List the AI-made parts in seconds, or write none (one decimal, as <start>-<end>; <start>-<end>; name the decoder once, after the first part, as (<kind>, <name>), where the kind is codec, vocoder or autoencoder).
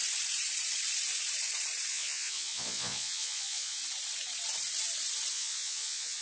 1.9-3.8 (vocoder, Vocos); 5.3-6.2